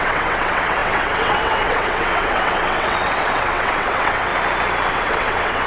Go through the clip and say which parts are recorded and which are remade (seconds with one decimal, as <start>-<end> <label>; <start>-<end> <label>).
0.0-4.3 remade; 4.3-4.9 recorded; 4.9-5.7 remade